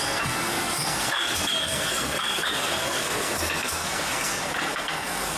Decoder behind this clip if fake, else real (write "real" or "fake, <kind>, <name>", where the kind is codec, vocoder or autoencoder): fake, codec, SNAC